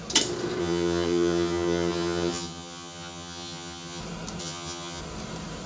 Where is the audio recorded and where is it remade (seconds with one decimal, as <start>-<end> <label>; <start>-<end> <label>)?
0.0-0.6 recorded; 0.6-4.0 remade; 4.0-4.4 recorded; 4.4-5.0 remade; 5.0-5.7 recorded